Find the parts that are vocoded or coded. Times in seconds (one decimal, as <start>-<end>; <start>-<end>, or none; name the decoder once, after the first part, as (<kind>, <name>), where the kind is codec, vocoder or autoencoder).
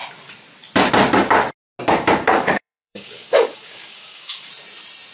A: 2.3-4.5 (codec, DAC)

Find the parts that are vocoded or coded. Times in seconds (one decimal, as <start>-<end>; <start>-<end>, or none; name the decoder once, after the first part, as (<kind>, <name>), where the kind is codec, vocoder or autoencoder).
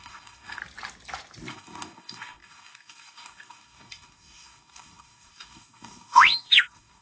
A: 0.0-0.6 (codec, DAC); 1.5-7.0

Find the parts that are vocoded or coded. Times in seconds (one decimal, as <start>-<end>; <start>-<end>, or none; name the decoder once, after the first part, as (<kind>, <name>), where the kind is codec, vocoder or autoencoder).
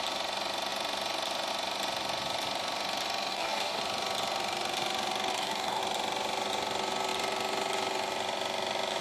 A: 3.3-3.8 (codec, DAC); 5.3-5.8